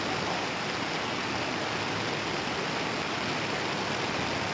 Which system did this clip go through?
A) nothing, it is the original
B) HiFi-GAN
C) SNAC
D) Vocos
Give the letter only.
A